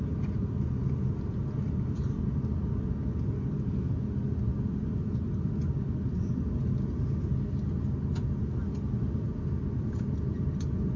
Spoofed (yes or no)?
no